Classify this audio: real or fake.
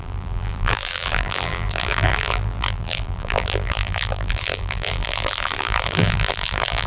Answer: fake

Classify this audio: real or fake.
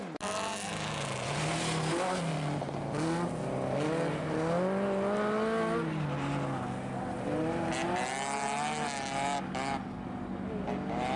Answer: real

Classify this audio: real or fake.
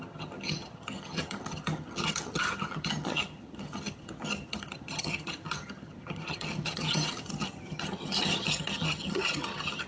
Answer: fake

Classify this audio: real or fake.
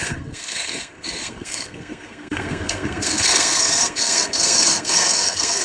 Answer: fake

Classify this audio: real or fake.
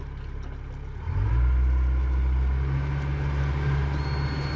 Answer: real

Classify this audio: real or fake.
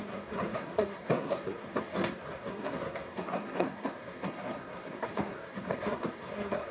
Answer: fake